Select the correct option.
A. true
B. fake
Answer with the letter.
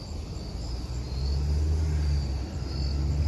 A